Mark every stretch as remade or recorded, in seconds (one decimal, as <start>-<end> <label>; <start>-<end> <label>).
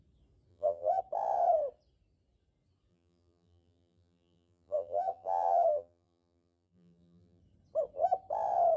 0.0-0.5 recorded; 0.5-1.0 remade; 1.0-2.9 recorded; 2.9-7.4 remade; 7.4-8.8 recorded